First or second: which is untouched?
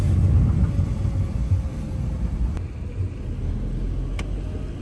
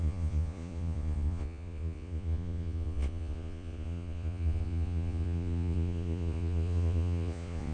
first